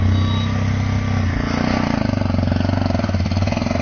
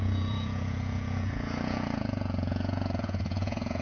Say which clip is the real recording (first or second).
first